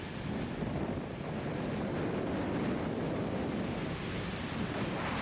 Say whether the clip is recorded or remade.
recorded